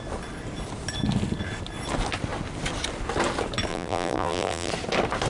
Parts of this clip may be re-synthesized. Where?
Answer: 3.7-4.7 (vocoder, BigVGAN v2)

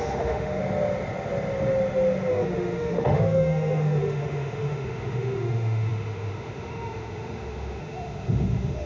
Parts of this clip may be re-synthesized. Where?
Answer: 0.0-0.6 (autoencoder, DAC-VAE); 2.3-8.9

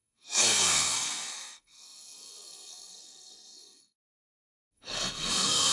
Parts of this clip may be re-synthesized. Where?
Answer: 0.0-5.7 (codec, SNAC)

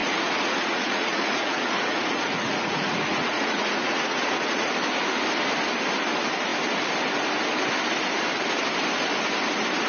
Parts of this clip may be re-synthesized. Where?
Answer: 0.0-4.7 (vocoder, Vocos)

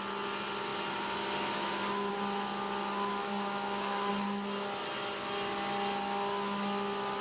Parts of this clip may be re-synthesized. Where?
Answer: 3.2-4.1 (codec, DAC)

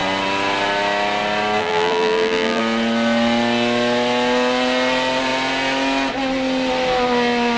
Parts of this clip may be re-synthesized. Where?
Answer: 1.6-2.6 (vocoder, BigVGAN v2)

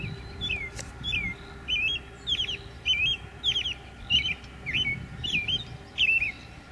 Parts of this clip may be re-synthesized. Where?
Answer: none

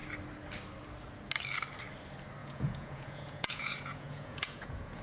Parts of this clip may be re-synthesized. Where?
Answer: 2.4-5.0 (vocoder, Vocos)